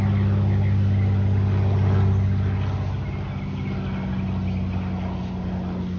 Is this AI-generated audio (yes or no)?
no